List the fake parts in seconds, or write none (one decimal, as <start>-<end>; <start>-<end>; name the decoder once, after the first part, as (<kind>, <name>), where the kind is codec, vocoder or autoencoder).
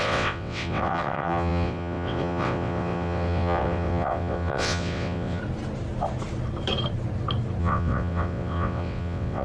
0.0-5.4 (vocoder, WaveNeXt); 7.6-9.4